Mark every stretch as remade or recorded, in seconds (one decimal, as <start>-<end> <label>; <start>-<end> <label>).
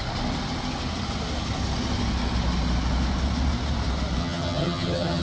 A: 0.0-4.2 recorded; 4.2-5.2 remade